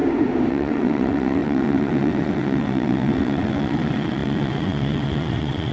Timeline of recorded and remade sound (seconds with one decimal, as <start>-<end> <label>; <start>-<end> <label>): 0.0-0.5 recorded; 0.5-5.7 remade